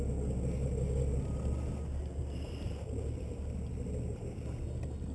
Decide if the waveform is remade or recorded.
recorded